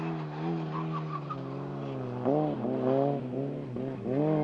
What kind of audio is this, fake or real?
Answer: real